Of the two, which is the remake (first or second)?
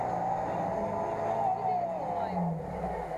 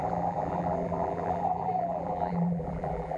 second